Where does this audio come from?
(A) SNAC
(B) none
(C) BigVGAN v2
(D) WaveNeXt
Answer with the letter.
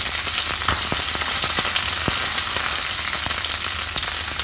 B